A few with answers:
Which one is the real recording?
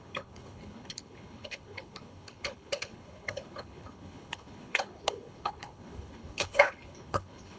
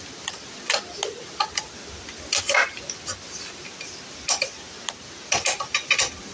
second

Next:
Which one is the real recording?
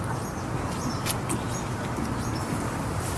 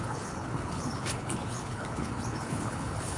first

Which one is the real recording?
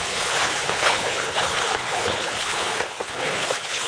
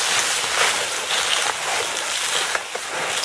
second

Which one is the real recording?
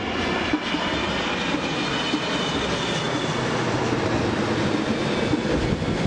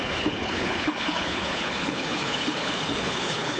first